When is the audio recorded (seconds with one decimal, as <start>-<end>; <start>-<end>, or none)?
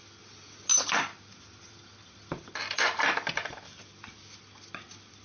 0.0-0.7; 3.8-5.2